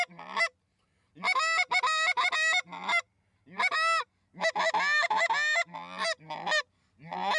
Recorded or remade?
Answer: recorded